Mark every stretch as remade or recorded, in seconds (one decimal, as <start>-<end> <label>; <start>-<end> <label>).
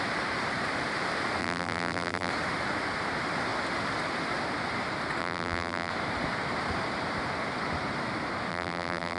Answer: 0.0-1.4 recorded; 1.4-2.3 remade; 2.3-5.2 recorded; 5.2-5.9 remade; 5.9-8.5 recorded; 8.5-9.2 remade